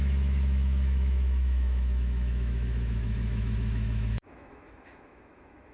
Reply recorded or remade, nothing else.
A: remade